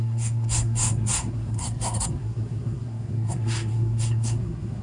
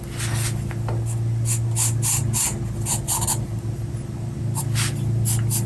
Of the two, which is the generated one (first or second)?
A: first